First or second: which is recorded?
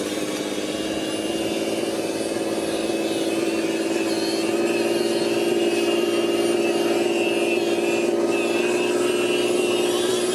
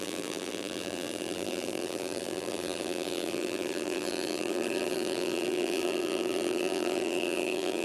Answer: first